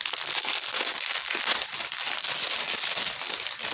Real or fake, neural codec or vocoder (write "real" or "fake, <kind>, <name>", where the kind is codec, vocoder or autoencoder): real